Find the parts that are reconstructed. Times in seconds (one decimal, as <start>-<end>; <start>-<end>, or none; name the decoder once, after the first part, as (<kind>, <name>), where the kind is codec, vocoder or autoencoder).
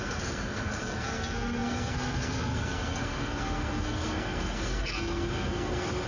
0.0-6.1 (codec, SNAC)